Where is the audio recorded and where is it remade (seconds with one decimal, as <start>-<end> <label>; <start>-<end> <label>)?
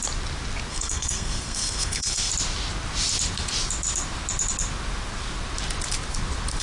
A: 0.0-0.7 recorded; 0.7-2.3 remade; 2.3-6.6 recorded